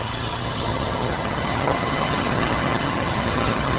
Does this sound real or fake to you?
fake